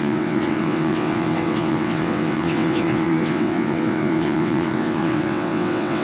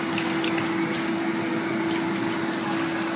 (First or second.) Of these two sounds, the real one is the second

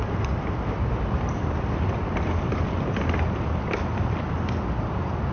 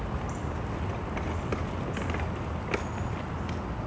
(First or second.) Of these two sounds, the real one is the second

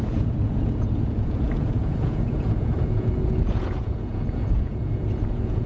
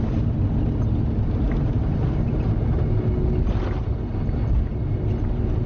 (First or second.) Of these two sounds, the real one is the second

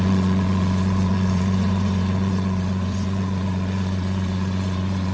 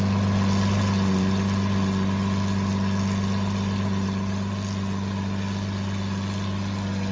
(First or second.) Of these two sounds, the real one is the second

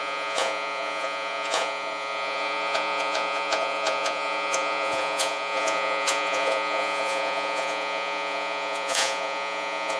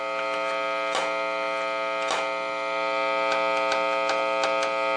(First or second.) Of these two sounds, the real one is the second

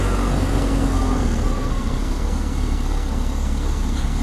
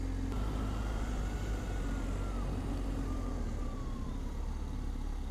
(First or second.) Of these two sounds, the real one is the second